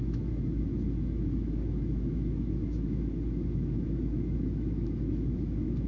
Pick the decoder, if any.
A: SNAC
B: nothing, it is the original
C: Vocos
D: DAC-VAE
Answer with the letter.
D